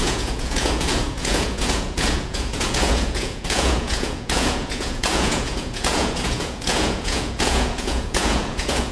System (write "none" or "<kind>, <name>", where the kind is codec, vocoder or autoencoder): vocoder, Vocos